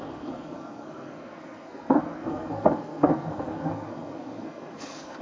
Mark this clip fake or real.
fake